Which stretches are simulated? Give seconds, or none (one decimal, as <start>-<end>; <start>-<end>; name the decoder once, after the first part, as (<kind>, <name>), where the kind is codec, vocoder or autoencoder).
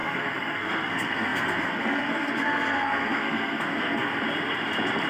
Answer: 0.0-4.1 (codec, SNAC)